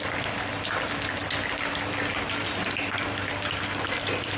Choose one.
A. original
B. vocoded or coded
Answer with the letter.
A